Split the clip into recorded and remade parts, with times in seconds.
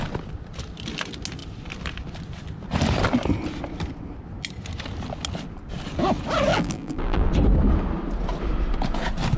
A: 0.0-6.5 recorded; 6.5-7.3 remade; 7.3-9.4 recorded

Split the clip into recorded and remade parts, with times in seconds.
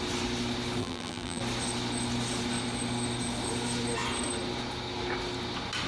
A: 0.0-0.8 recorded; 0.8-1.4 remade; 1.4-5.9 recorded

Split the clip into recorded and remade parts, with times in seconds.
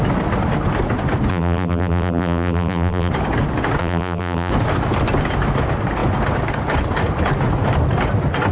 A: 0.0-1.3 recorded; 1.3-3.1 remade; 3.1-3.8 recorded; 3.8-4.5 remade; 4.5-8.5 recorded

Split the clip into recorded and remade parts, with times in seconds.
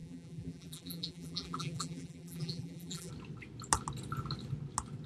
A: 0.0-3.1 remade; 3.1-5.1 recorded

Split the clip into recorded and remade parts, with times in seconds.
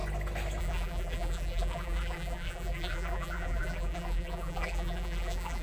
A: 0.0-0.6 recorded; 0.6-5.6 remade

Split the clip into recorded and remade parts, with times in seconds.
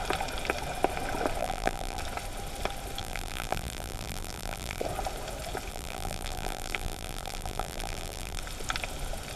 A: 0.0-1.4 recorded; 1.4-2.0 remade; 2.0-3.0 recorded; 3.0-4.8 remade; 4.8-5.7 recorded; 5.7-8.4 remade; 8.4-9.4 recorded